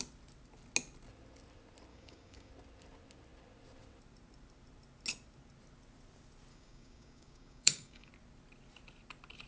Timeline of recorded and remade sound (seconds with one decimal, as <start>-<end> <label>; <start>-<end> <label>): 0.0-1.9 recorded; 1.9-2.5 remade; 2.5-6.5 recorded; 6.5-8.1 remade; 8.1-9.5 recorded